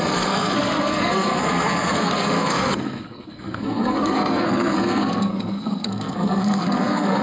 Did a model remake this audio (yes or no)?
yes